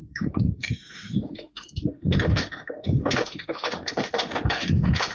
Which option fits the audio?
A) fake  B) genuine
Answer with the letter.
A